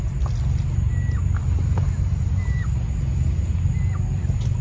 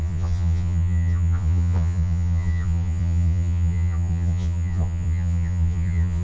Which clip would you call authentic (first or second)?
first